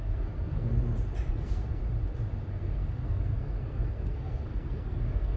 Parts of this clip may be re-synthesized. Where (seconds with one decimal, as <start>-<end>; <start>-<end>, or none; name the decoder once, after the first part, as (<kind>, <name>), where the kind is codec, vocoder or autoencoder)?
0.0-0.7 (codec, SNAC); 1.3-1.8; 2.5-5.4